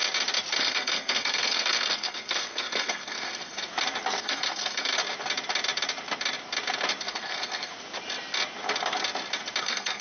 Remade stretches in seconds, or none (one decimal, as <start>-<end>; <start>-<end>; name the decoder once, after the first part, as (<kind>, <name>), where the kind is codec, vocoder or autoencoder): 0.6-3.7 (codec, SNAC); 4.2-4.9; 7.0-7.7; 9.6-10.0